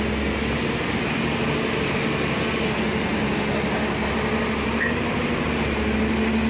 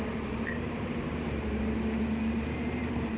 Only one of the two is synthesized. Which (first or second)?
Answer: second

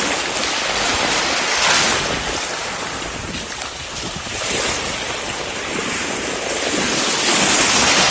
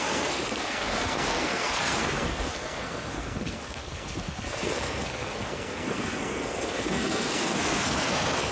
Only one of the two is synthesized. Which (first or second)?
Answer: second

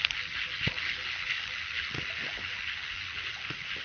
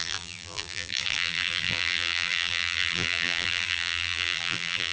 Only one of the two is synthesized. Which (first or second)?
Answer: second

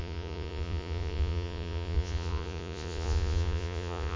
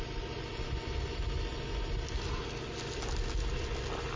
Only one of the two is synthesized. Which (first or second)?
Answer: first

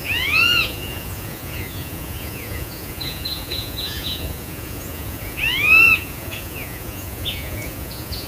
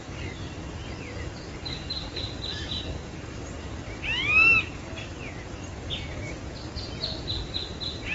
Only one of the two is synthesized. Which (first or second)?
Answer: first